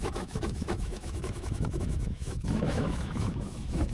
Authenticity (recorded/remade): remade